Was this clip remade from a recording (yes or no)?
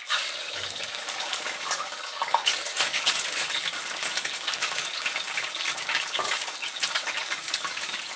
yes